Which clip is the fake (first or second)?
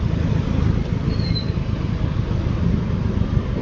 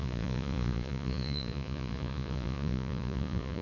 second